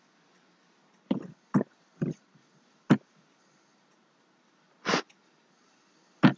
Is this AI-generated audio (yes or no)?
no